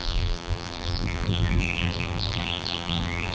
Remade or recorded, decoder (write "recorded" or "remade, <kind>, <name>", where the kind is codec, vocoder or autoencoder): remade, vocoder, BigVGAN v2